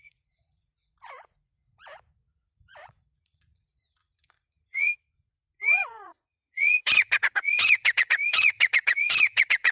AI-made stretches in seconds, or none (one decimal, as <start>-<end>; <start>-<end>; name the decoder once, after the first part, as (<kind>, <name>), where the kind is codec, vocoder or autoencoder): 0.0-4.9 (vocoder, Vocos); 5.6-9.7